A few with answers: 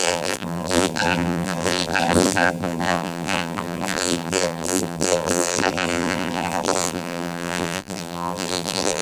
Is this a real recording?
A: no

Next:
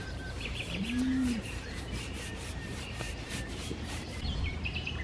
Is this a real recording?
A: no